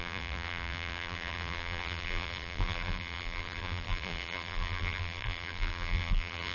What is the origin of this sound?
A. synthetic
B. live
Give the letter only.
A